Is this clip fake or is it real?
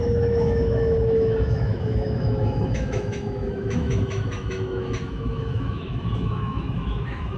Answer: fake